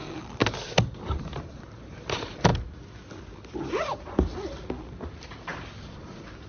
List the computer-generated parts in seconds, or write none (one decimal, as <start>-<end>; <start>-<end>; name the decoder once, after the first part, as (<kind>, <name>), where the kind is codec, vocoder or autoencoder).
0.0-0.4 (vocoder, BigVGAN v2); 1.7-2.5; 4.8-5.5; 6.0-6.5